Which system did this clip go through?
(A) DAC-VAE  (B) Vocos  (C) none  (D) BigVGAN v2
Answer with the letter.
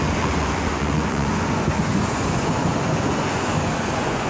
B